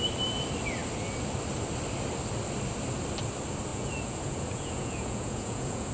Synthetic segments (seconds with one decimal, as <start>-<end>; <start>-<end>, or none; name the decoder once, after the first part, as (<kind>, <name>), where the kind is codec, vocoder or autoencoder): 3.7-5.9 (vocoder, Vocos)